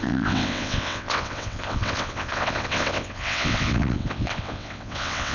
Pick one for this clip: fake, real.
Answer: fake